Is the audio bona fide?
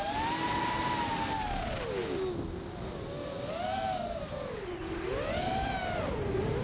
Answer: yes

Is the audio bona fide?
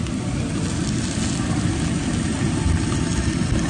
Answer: yes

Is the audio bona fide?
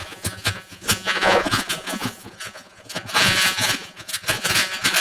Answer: no